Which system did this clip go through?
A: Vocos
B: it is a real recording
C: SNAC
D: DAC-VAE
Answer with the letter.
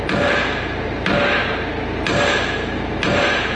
B